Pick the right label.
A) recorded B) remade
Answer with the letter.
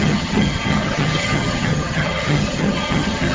B